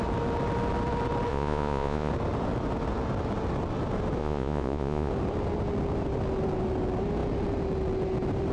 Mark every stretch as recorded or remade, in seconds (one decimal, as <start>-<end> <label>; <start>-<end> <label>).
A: 0.0-1.3 recorded; 1.3-2.1 remade; 2.1-4.2 recorded; 4.2-5.1 remade; 5.1-8.5 recorded